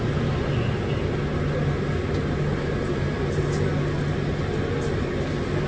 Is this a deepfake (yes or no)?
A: no